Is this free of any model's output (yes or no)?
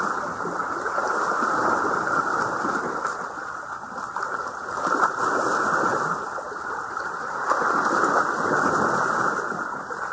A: yes